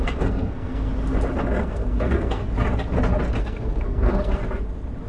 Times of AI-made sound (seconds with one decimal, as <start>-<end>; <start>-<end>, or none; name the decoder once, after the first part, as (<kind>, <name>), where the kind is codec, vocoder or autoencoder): 0.0-0.9 (codec, SNAC); 1.6-2.4; 3.4-4.4